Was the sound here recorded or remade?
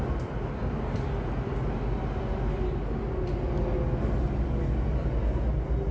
recorded